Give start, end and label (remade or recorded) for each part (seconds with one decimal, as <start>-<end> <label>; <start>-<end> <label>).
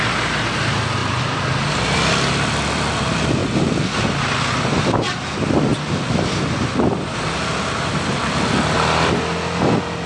0.0-3.4 recorded; 3.4-4.0 remade; 4.0-5.7 recorded; 5.7-6.4 remade; 6.4-10.1 recorded